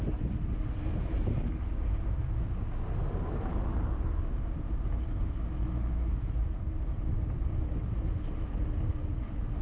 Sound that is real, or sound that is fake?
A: real